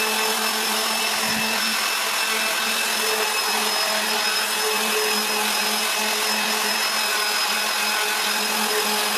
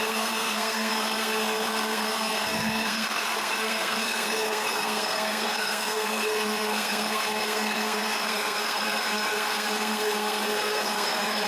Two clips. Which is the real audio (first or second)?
first